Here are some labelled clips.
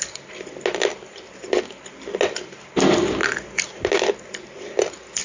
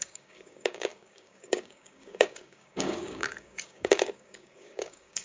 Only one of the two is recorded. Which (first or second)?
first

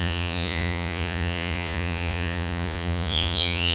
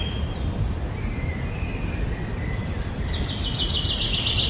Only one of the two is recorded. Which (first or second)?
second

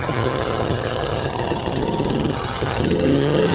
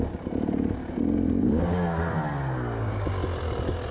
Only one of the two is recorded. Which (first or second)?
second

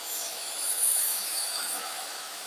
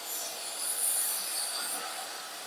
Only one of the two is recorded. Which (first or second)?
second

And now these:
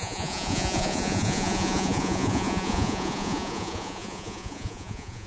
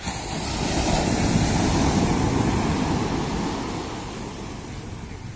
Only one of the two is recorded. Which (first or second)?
second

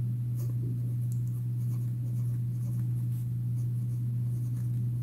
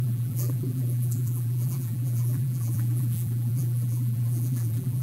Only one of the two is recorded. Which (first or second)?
first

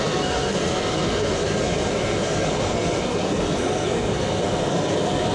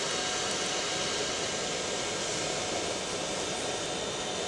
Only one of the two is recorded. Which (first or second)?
second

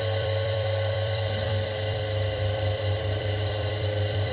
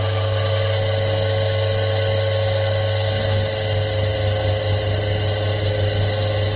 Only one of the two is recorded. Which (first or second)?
second